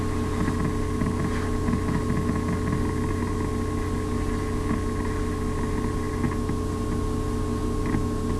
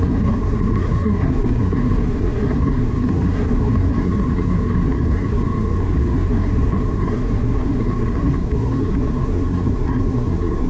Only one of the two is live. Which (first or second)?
first